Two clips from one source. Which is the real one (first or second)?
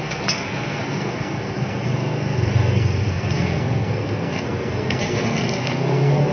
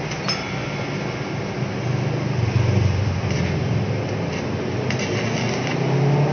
second